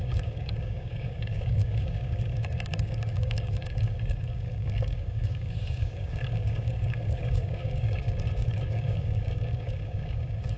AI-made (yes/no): yes